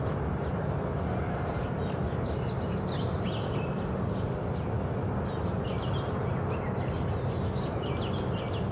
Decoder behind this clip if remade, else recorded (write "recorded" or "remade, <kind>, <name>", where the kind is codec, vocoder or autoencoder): recorded